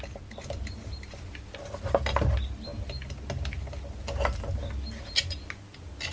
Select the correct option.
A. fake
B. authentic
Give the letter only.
B